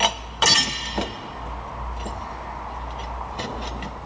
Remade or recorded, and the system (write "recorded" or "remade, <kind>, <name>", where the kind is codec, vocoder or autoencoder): recorded